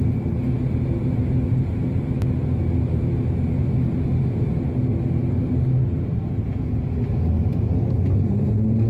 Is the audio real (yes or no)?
yes